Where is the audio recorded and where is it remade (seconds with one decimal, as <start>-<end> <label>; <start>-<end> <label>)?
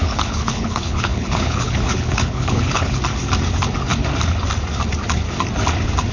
0.0-3.0 remade; 3.0-6.1 recorded